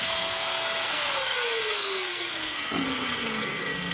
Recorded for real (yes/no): no